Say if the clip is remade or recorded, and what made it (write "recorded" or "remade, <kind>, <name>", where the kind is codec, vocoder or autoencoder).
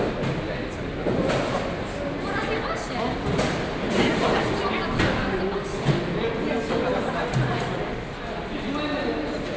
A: recorded